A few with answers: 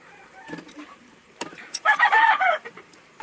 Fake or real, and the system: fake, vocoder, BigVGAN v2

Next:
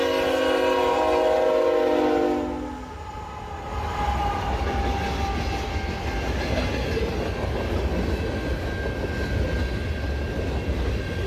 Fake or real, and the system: real